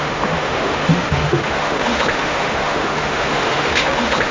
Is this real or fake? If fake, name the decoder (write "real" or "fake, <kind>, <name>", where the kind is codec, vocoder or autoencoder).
fake, autoencoder, DAC-VAE